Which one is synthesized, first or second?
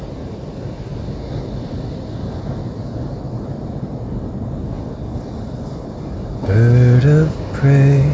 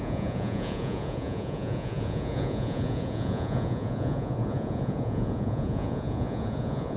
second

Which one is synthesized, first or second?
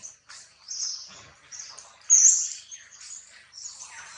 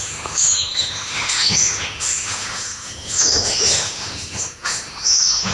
second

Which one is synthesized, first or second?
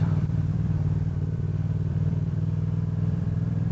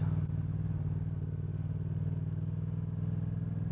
first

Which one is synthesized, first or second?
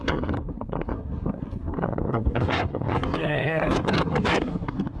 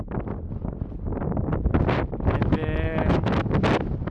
first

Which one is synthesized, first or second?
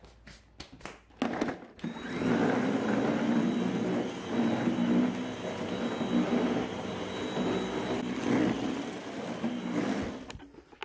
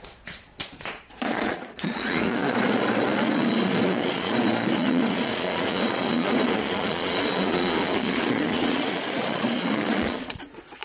second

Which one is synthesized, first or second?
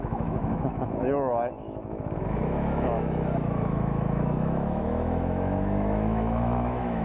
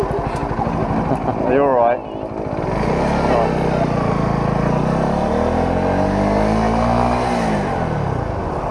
first